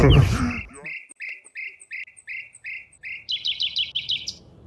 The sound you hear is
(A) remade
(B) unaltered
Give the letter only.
B